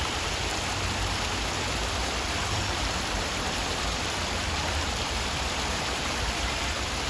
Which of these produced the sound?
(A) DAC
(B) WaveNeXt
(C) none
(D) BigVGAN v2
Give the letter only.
D